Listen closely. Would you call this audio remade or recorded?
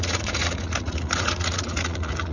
remade